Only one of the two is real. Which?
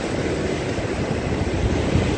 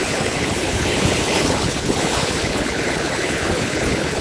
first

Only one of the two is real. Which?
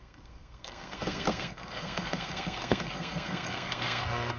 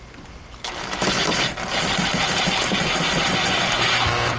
second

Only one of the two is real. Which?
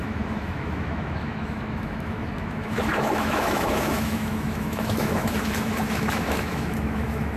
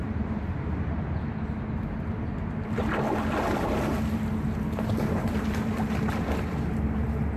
second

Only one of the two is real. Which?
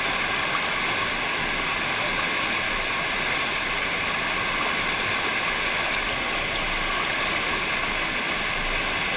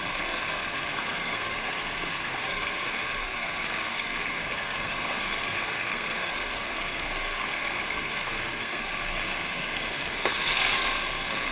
first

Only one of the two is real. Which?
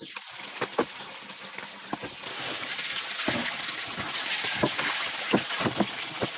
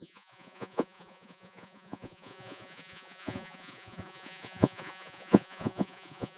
first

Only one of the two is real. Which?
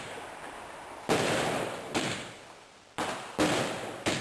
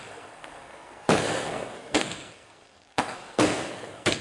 first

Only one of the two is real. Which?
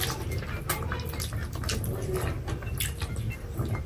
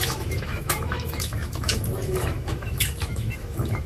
first